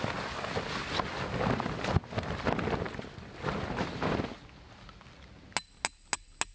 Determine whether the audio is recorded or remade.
recorded